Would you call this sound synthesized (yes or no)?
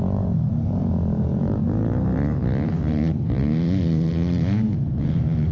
yes